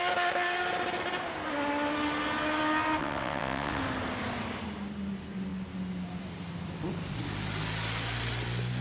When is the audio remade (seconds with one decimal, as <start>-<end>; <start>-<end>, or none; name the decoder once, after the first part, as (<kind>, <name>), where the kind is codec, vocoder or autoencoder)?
3.0-3.8 (vocoder, WaveNeXt)